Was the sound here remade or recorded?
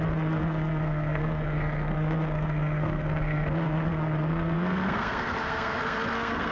remade